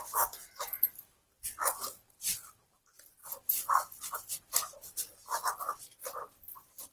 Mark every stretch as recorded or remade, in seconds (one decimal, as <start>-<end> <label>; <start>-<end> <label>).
0.0-6.9 recorded